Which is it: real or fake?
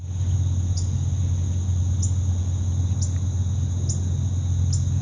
real